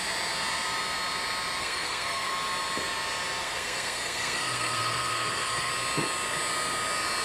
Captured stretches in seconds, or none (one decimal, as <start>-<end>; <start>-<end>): 0.0-1.6; 2.3-3.4; 5.7-7.2